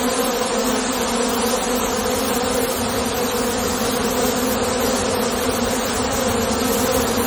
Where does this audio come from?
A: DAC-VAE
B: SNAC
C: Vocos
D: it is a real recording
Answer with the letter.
D